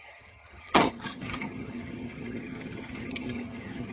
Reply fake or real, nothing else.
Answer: fake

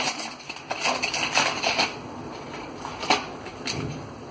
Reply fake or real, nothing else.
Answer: real